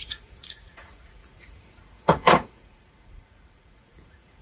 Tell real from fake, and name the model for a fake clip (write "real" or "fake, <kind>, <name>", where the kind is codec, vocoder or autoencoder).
fake, vocoder, Vocos